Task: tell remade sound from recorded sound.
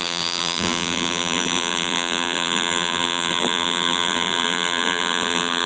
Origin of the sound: remade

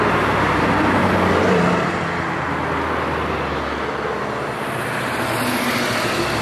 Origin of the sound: recorded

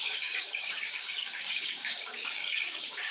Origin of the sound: remade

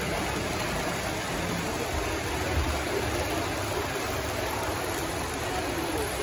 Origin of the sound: recorded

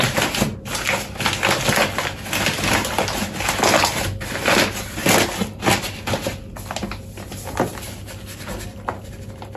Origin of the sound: recorded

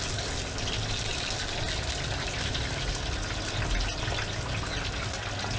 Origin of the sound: recorded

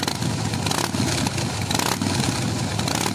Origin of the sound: recorded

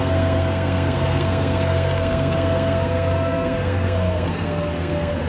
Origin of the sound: remade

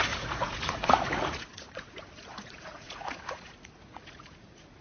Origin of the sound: remade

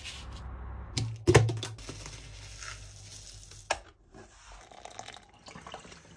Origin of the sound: recorded